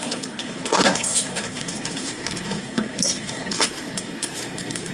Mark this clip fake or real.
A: fake